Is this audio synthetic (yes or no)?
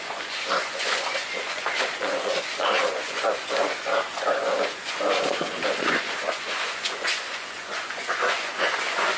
yes